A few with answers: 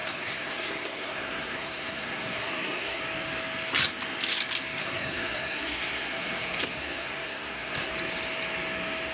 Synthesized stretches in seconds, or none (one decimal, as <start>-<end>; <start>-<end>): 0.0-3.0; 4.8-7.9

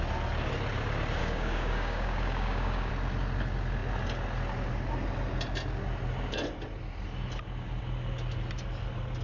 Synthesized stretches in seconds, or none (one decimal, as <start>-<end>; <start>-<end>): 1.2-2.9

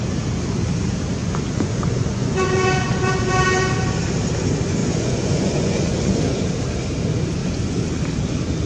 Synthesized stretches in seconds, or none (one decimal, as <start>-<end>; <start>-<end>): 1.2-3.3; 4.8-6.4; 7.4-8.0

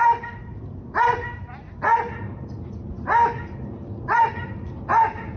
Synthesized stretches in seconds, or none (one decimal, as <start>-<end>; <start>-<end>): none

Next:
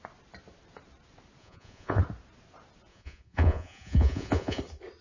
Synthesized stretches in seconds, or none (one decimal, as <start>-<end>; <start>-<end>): 1.4-2.0; 2.9-4.6

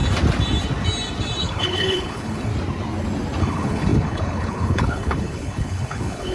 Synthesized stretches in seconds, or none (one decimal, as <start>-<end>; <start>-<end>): 1.4-2.5; 3.4-6.3

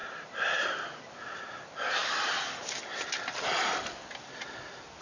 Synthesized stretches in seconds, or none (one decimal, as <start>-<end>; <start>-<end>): none

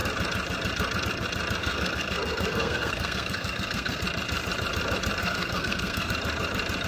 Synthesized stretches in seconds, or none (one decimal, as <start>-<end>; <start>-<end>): 1.6-4.0; 5.2-6.1